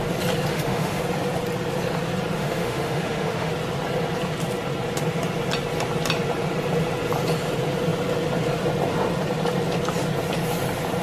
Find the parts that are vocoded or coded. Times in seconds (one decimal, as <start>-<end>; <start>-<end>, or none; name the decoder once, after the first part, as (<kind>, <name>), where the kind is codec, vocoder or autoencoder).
0.5-1.0 (autoencoder, DAC-VAE); 2.4-3.5